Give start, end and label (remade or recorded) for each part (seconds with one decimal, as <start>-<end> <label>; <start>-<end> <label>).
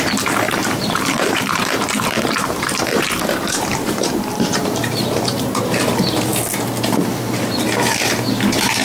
0.0-0.6 recorded; 0.6-5.6 remade; 5.6-8.8 recorded